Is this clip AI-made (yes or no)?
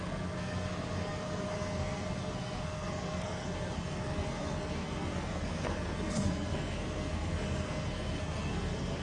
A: yes